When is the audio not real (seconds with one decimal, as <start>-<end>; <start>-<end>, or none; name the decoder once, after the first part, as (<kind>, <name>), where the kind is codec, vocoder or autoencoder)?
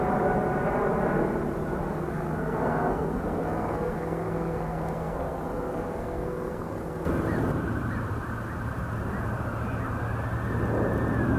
1.9-7.1 (codec, SNAC)